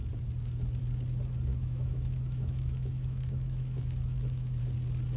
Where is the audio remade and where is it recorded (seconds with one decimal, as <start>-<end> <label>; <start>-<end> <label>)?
0.0-1.5 recorded; 1.5-4.6 remade; 4.6-5.2 recorded